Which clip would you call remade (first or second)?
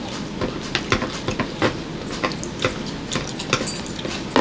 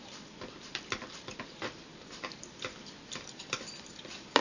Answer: second